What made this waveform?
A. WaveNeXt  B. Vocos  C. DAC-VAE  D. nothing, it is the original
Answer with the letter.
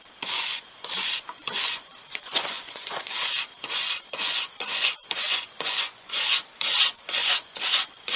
B